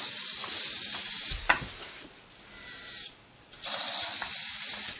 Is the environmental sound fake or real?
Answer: real